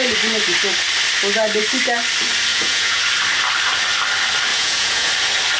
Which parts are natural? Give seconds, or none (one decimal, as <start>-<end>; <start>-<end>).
0.0-2.5; 3.0-4.5; 5.1-5.6